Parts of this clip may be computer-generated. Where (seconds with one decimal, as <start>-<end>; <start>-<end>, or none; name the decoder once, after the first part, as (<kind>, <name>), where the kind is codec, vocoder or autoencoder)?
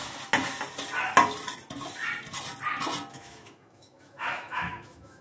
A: 3.1-5.2 (autoencoder, DAC-VAE)